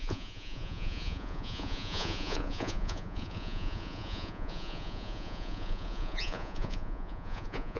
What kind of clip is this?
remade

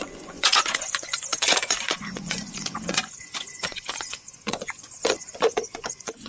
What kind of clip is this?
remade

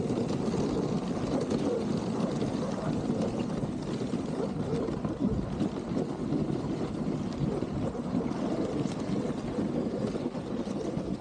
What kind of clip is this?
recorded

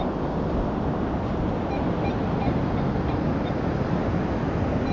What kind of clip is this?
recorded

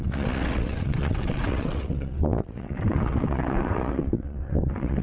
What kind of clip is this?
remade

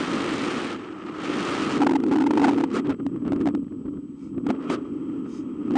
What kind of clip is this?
recorded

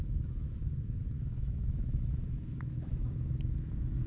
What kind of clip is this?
remade